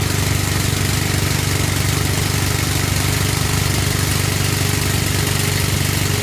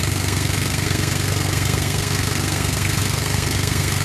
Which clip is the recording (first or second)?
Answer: first